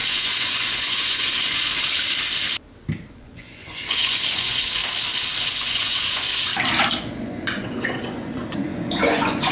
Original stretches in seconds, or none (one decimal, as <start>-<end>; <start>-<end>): 1.7-3.1; 4.8-5.4; 6.5-7.0